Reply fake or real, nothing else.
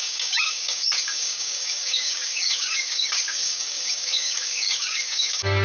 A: fake